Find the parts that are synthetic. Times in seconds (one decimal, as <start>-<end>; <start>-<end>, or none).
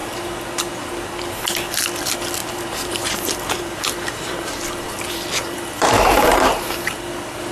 2.4-6.8